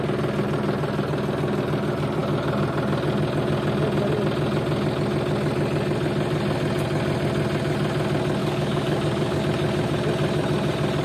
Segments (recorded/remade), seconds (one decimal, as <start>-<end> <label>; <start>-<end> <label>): 0.0-8.4 recorded; 8.4-9.4 remade; 9.4-11.0 recorded